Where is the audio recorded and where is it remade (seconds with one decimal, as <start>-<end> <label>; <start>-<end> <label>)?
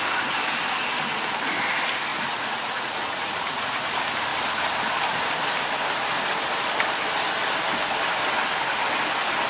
0.0-2.1 recorded; 2.1-3.8 remade; 3.8-9.5 recorded